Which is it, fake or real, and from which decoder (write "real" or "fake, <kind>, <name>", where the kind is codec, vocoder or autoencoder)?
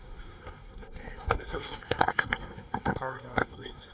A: fake, codec, SNAC